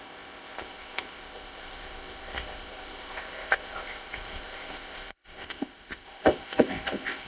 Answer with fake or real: fake